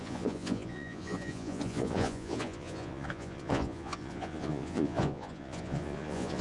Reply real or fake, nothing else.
fake